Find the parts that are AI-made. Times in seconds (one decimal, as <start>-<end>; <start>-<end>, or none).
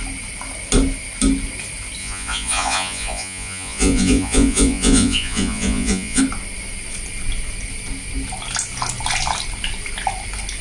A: 2.0-6.2